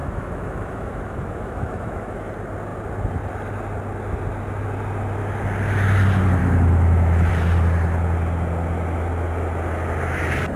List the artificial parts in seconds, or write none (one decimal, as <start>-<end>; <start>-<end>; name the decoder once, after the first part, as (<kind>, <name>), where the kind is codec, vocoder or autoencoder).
0.0-2.3 (autoencoder, DAC-VAE); 6.4-7.3